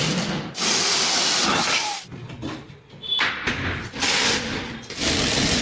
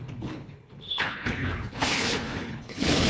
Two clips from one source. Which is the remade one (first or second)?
second